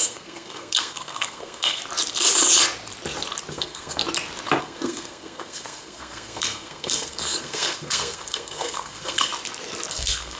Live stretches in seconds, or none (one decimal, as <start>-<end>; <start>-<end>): 1.8-3.5; 4.0-4.6; 9.3-9.9